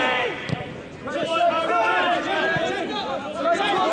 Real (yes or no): no